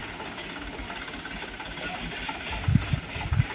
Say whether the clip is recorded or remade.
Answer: recorded